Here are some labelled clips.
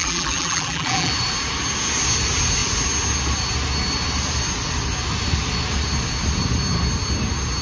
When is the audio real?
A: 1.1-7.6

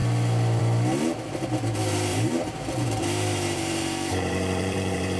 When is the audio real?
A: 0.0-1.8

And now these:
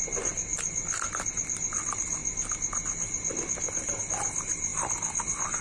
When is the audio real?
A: 0.5-1.3; 2.2-4.0

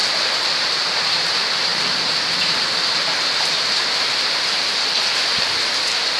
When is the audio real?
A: none

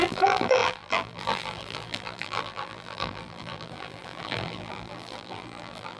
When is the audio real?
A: none

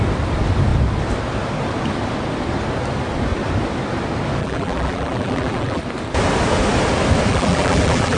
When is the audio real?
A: 0.0-4.4; 5.8-7.3

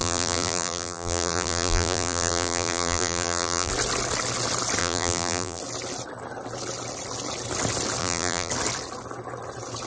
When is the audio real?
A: 3.7-4.8; 5.6-8.0; 8.5-9.9